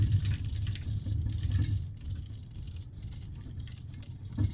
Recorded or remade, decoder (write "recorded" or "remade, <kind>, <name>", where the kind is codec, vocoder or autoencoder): recorded